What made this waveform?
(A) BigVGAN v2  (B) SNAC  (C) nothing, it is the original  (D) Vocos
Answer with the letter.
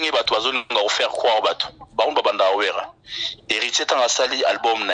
C